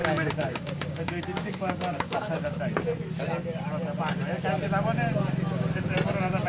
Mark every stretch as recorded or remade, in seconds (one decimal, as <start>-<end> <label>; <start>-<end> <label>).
0.0-2.6 remade; 2.6-6.5 recorded

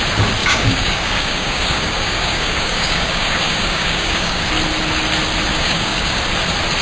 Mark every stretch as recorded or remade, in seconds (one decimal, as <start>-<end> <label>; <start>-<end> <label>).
0.0-0.4 recorded; 0.4-4.4 remade; 4.4-5.5 recorded; 5.5-6.2 remade; 6.2-6.8 recorded